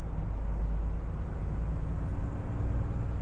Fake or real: real